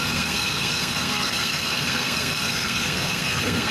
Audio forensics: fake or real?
fake